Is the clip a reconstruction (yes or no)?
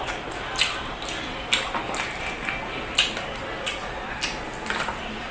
no